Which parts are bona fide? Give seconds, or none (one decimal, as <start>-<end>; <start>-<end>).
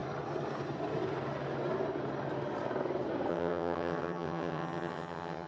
0.0-3.3